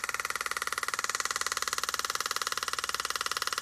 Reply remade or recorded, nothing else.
recorded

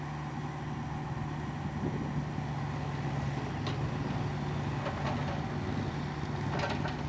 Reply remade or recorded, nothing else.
recorded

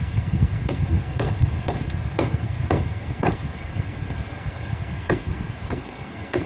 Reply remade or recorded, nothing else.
remade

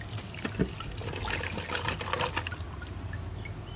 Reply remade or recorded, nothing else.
recorded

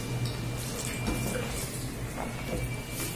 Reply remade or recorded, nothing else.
recorded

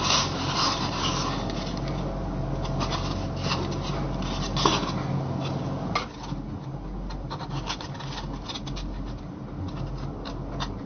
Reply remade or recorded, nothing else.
recorded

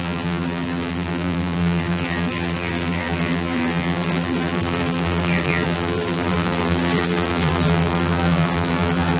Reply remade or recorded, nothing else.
remade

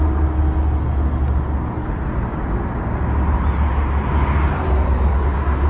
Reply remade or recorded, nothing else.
recorded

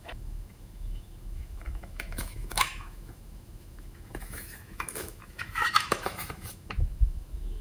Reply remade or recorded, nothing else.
remade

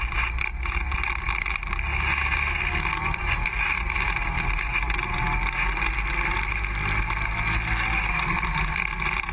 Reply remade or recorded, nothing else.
recorded